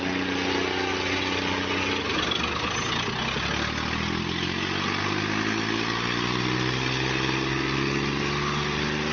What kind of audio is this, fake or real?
real